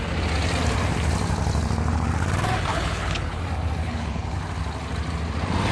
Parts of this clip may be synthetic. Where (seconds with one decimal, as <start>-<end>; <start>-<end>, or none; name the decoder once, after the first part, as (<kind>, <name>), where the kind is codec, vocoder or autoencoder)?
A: 2.7-3.4 (codec, HILCodec); 3.8-4.4